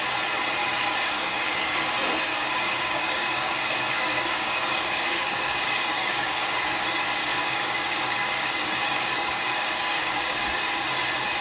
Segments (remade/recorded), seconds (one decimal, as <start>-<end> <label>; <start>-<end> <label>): 0.0-0.6 recorded; 0.6-1.9 remade; 1.9-2.3 recorded; 2.3-6.6 remade; 6.6-7.3 recorded; 7.3-10.8 remade; 10.8-11.4 recorded

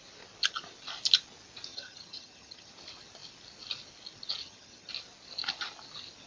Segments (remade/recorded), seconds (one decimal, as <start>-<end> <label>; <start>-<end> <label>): 0.0-1.7 recorded; 1.7-2.7 remade; 2.7-4.4 recorded; 4.4-4.9 remade; 4.9-6.3 recorded

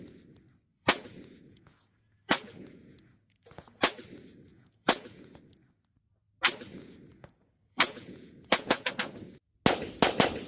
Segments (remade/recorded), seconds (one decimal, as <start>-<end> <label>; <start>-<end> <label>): 0.0-0.7 recorded; 0.7-3.9 remade; 3.9-4.5 recorded; 4.5-5.4 remade; 5.4-6.7 recorded; 6.7-8.9 remade; 8.9-10.5 recorded